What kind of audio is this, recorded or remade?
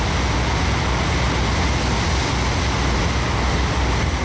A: recorded